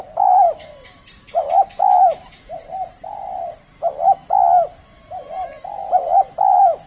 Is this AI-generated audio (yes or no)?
no